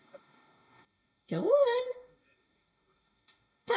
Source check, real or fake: fake